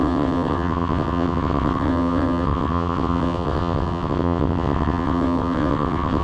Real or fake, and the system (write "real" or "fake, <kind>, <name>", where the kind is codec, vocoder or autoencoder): fake, vocoder, WaveNeXt